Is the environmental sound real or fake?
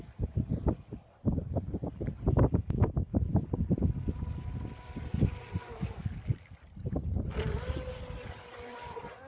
real